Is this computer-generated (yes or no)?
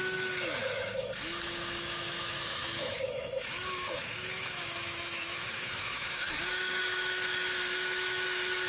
yes